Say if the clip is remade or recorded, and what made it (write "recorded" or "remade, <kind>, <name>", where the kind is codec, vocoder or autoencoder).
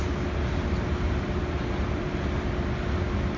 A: recorded